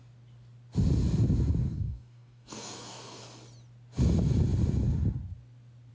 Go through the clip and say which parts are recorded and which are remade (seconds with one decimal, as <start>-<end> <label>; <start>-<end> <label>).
0.0-1.6 recorded; 1.6-3.2 remade; 3.2-5.9 recorded